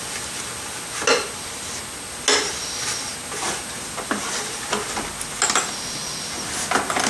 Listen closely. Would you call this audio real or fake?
real